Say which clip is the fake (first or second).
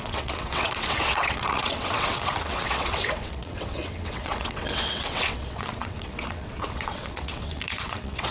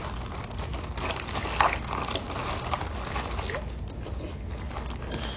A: first